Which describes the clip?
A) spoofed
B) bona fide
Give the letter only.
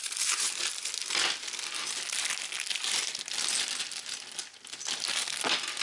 B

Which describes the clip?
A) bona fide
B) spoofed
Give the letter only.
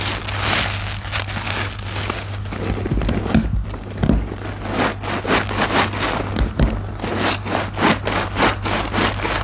A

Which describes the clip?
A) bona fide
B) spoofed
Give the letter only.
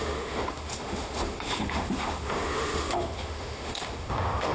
B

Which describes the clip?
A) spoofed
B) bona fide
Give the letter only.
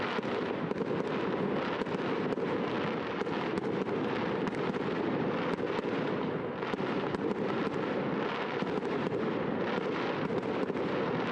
B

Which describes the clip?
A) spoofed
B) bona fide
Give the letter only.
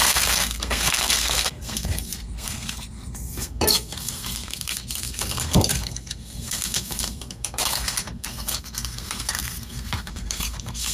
A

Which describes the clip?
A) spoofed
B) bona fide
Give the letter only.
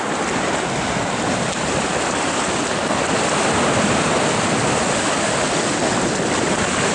B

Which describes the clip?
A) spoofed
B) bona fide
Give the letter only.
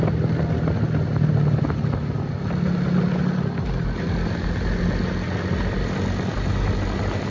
B